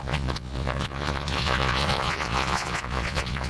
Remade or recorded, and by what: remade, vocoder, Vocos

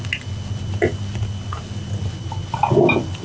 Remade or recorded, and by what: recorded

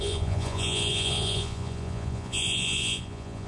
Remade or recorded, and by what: remade, vocoder, Vocos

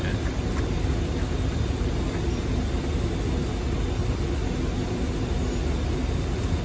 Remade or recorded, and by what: recorded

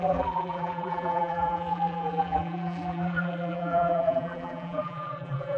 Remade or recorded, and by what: remade, vocoder, BigVGAN v2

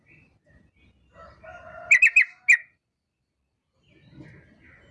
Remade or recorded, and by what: recorded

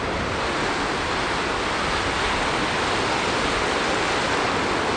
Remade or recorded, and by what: recorded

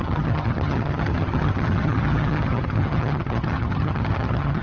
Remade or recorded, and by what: remade, vocoder, HiFi-GAN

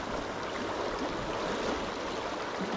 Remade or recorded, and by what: recorded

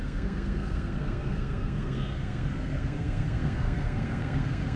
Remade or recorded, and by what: remade, codec, SNAC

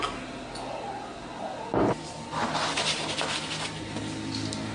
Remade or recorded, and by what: recorded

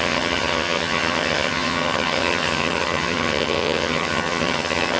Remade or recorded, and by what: remade, vocoder, HiFi-GAN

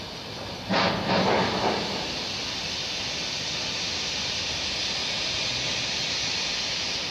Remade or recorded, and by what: recorded